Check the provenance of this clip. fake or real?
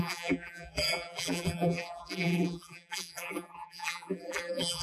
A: fake